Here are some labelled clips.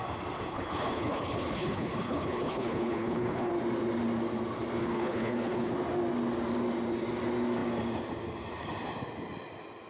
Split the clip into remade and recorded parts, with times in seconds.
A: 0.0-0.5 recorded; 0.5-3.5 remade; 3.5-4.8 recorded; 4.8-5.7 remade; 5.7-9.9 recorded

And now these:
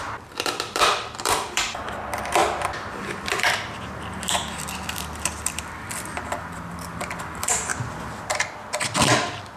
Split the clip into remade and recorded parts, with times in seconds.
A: 0.0-9.6 remade

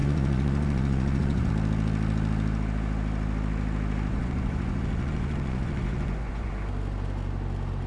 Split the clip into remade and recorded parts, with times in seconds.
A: 0.0-1.5 remade; 1.5-4.1 recorded; 4.1-6.5 remade; 6.5-7.9 recorded

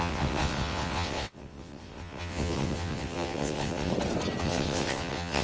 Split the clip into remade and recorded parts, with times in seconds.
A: 0.0-3.9 remade; 3.9-4.4 recorded; 4.4-5.4 remade

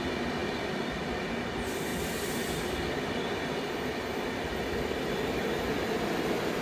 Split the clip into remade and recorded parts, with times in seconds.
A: 0.0-6.6 recorded

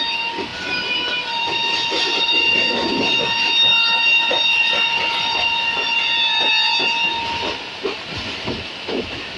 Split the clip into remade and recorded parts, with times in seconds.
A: 0.0-9.4 recorded

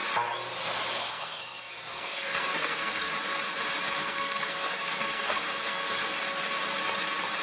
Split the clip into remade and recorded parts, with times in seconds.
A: 0.0-1.0 recorded; 1.0-3.1 remade; 3.1-4.0 recorded; 4.0-6.1 remade; 6.1-7.4 recorded

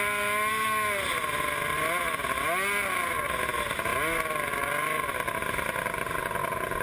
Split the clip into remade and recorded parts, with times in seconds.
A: 0.0-6.8 recorded